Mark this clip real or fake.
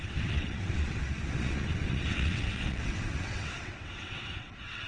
fake